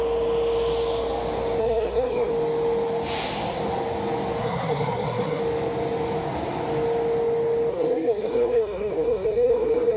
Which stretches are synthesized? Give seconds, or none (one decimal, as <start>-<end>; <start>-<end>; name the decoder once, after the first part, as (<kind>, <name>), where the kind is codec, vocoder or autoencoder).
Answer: 1.6-2.3 (codec, SNAC); 4.4-5.4; 7.7-10.0